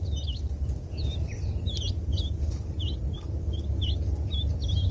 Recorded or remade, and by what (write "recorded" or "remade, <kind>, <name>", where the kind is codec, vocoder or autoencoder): recorded